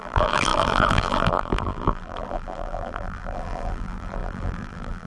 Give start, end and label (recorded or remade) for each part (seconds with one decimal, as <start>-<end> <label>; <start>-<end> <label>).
0.0-5.1 remade